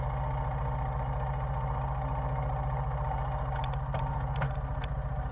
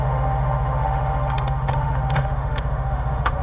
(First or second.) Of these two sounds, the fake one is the second